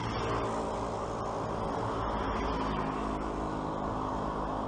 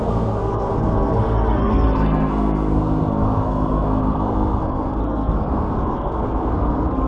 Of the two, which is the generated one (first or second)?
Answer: second